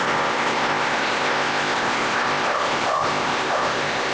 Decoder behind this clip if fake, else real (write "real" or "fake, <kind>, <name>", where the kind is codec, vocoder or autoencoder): fake, codec, ZipCodec